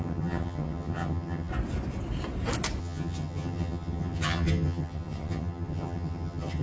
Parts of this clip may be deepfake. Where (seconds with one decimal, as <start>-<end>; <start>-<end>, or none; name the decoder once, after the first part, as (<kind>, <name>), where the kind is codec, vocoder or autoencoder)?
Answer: 0.0-1.5 (vocoder, HiFi-GAN); 2.8-6.6